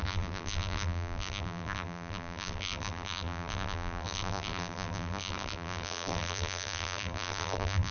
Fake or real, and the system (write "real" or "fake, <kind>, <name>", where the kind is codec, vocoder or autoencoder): fake, vocoder, BigVGAN v2